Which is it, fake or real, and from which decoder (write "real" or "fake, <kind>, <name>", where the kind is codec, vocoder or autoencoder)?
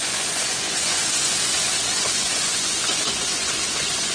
fake, vocoder, Vocos